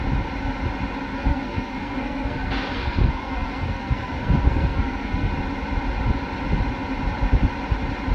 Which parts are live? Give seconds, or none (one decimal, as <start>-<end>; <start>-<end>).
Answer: 0.0-1.1; 5.3-8.1